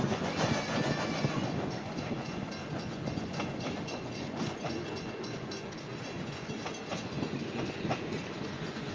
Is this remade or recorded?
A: remade